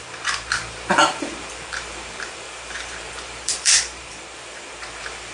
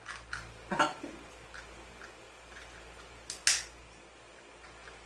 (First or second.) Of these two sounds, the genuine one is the second